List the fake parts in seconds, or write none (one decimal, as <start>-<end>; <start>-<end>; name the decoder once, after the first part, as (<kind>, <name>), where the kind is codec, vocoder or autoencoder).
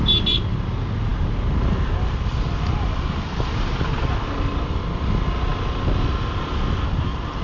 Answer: none